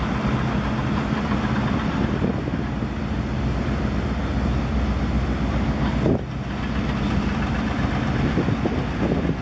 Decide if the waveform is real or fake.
real